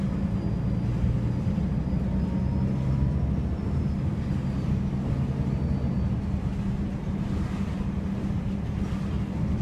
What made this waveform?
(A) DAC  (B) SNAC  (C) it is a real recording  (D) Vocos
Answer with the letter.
C